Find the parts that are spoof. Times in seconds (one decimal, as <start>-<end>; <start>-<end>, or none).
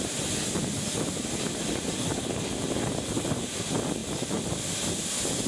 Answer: none